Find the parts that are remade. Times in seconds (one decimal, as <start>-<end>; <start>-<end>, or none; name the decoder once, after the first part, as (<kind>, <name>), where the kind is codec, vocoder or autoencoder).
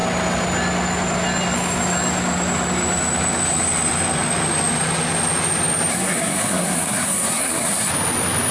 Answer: 5.9-7.9 (codec, SNAC)